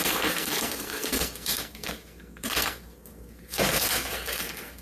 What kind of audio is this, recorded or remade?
remade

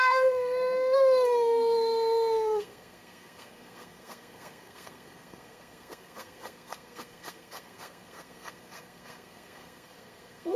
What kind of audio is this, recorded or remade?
remade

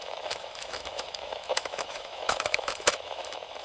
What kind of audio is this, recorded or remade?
remade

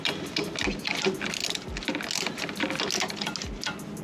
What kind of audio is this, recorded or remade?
recorded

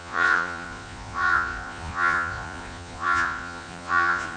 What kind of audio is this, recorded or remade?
remade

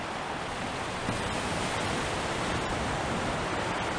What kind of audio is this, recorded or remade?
remade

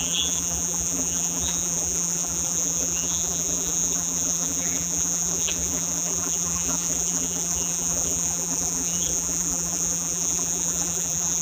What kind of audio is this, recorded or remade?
remade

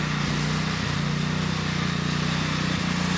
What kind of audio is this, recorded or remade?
recorded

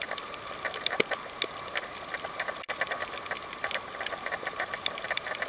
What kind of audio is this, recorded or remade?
recorded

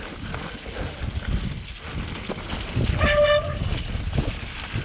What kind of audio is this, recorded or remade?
recorded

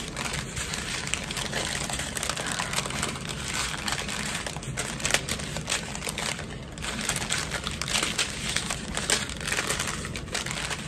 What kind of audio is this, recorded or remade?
recorded